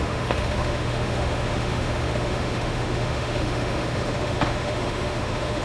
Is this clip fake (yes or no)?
yes